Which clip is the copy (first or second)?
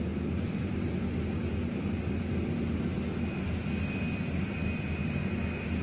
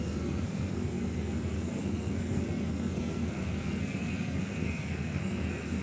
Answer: second